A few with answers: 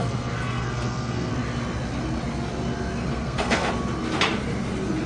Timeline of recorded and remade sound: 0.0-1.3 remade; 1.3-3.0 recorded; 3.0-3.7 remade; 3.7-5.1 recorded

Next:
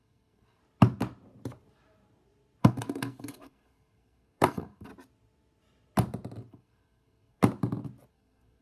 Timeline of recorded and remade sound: 0.0-0.6 remade; 0.6-2.6 recorded; 2.6-4.9 remade; 4.9-6.5 recorded; 6.5-7.4 remade; 7.4-8.1 recorded; 8.1-8.6 remade

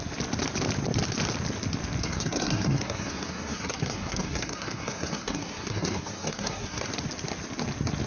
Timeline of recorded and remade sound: 0.0-2.0 recorded; 2.0-6.9 remade; 6.9-8.1 recorded

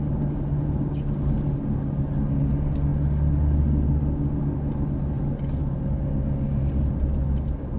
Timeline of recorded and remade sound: 0.0-7.8 recorded

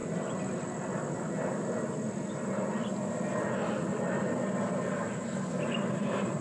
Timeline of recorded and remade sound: 0.0-6.4 recorded

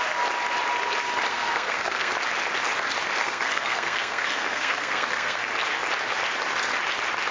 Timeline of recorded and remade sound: 0.0-1.3 recorded; 1.3-2.1 remade; 2.1-3.2 recorded; 3.2-5.4 remade; 5.4-7.3 recorded

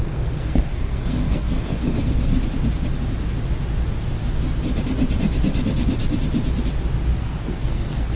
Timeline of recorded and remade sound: 0.0-2.3 remade; 2.3-7.2 recorded; 7.2-8.2 remade

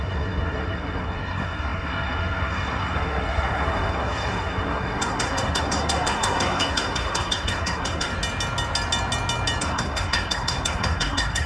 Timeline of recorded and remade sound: 0.0-8.1 remade; 8.1-9.6 recorded; 9.6-11.5 remade